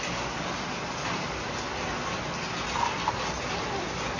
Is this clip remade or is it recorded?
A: recorded